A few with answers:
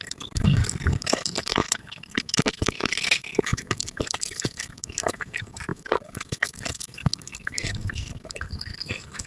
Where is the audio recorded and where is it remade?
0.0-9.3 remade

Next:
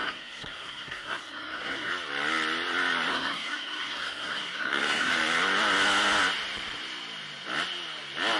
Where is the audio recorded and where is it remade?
0.0-1.9 remade; 1.9-3.1 recorded; 3.1-5.1 remade; 5.1-8.4 recorded

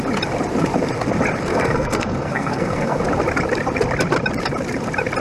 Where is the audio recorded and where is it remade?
0.0-1.5 recorded; 1.5-3.0 remade; 3.0-5.2 recorded

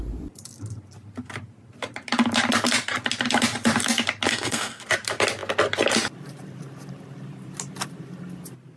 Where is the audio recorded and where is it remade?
0.0-4.3 recorded; 4.3-4.8 remade; 4.8-8.8 recorded

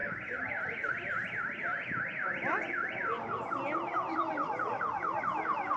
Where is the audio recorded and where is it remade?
0.0-5.8 recorded

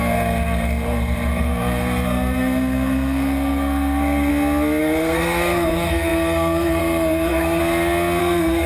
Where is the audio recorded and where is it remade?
0.0-4.3 remade; 4.3-4.8 recorded; 4.8-7.6 remade; 7.6-8.2 recorded; 8.2-8.7 remade

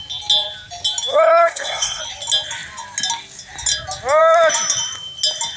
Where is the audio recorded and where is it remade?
0.0-1.1 recorded; 1.1-2.0 remade; 2.0-5.6 recorded